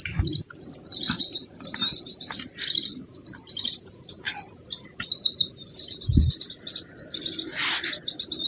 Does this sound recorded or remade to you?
recorded